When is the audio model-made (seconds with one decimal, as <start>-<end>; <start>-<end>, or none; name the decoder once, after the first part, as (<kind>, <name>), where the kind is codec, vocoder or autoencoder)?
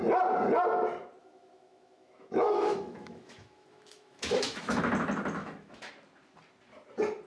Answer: 1.2-4.8 (autoencoder, DAC-VAE); 5.4-5.9